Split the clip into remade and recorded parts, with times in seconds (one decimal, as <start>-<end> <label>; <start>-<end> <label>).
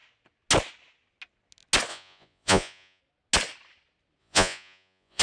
0.0-1.9 recorded; 1.9-3.0 remade; 3.0-4.2 recorded; 4.2-5.2 remade